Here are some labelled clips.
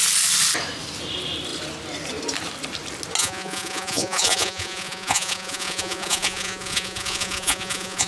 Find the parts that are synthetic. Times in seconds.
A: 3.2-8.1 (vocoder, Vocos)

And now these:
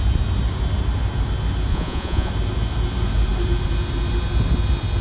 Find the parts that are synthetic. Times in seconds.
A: 1.7-2.3 (vocoder, Vocos)

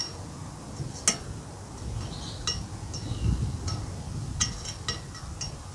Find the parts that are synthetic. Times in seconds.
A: none

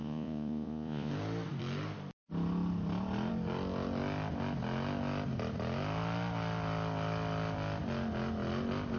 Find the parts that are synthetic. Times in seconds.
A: 0.0-1.1 (vocoder, Vocos)

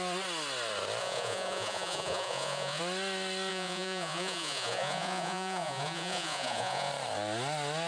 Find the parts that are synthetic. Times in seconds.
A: 1.0-2.8 (vocoder, Vocos); 3.5-6.9

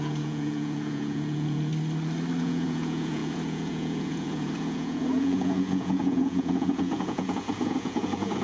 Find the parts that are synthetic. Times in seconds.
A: 0.0-1.7 (vocoder, Vocos); 2.4-8.4

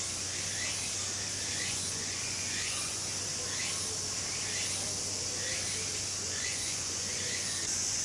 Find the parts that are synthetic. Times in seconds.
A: 0.0-0.5 (vocoder, Vocos); 1.5-3.1; 6.2-8.0